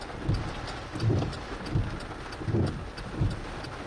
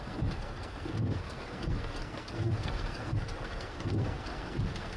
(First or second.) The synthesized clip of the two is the second